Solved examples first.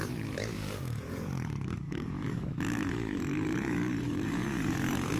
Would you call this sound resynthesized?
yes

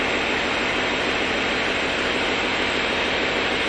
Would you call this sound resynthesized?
no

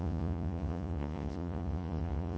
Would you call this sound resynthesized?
yes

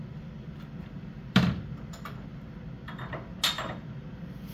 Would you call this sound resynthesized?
no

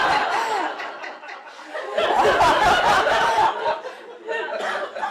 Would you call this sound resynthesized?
no